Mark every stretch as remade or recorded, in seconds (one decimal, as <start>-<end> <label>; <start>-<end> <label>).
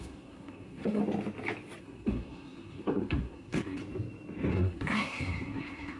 0.0-1.0 remade; 1.0-1.8 recorded; 1.8-3.8 remade; 3.8-4.5 recorded; 4.5-6.0 remade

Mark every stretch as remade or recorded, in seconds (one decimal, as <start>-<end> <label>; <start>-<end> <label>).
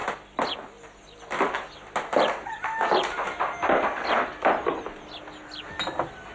0.0-6.3 recorded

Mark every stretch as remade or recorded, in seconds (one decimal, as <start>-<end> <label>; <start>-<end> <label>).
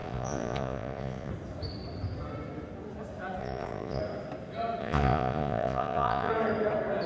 0.0-1.3 remade; 1.3-3.4 recorded; 3.4-4.0 remade; 4.0-4.8 recorded; 4.8-6.3 remade; 6.3-7.1 recorded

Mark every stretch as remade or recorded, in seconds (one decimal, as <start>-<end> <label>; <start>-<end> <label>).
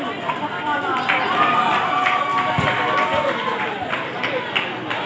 0.0-5.1 recorded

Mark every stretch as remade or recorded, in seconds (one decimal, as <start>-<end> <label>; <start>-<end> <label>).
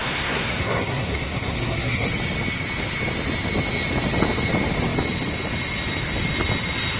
0.0-2.1 remade; 2.1-7.0 recorded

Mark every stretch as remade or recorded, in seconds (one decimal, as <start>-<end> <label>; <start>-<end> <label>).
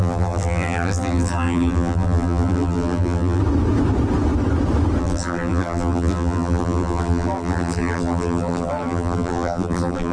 0.0-3.4 remade; 3.4-5.0 recorded; 5.0-10.1 remade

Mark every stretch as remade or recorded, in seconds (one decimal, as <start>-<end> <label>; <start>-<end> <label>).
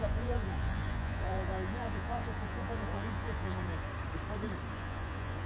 0.0-3.9 remade; 3.9-4.7 recorded; 4.7-5.5 remade